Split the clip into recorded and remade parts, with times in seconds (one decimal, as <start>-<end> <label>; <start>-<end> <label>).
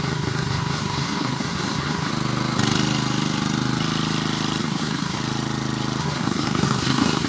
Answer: 0.0-2.1 remade; 2.1-4.6 recorded; 4.6-5.2 remade; 5.2-6.0 recorded; 6.0-7.3 remade